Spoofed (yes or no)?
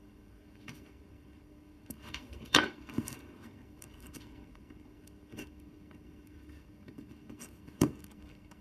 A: yes